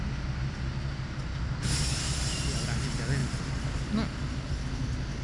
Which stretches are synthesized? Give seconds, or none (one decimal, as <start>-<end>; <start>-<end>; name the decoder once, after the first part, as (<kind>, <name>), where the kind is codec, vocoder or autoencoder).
none